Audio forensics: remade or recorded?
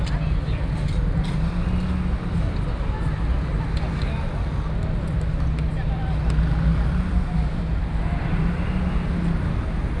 recorded